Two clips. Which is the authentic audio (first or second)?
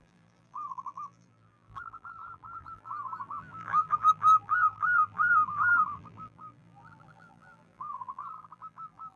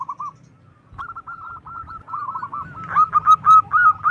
second